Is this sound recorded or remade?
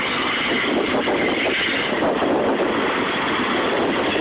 recorded